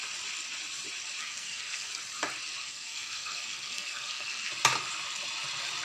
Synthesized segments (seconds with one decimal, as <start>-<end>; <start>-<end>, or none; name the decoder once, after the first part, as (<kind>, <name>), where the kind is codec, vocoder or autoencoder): 1.2-1.9 (codec, SNAC); 2.6-4.5